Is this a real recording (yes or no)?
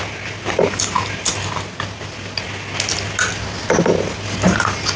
yes